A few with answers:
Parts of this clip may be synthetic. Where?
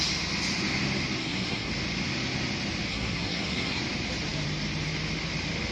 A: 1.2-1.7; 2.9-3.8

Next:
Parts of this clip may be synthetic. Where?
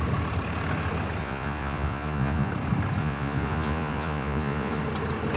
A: 1.2-2.5; 3.0-4.8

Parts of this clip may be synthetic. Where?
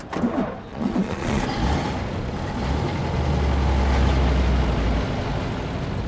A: 0.7-1.4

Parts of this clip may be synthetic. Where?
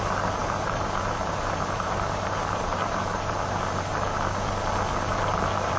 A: 0.4-3.3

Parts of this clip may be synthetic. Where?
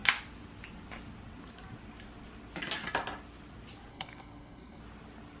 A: 3.9-4.8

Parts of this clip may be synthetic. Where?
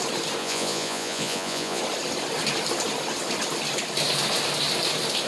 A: 0.4-1.8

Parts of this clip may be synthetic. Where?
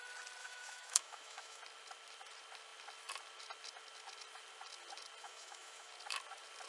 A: 0.4-1.6; 5.2-5.9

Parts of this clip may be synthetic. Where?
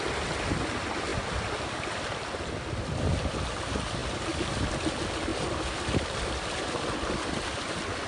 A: none